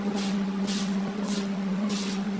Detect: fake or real fake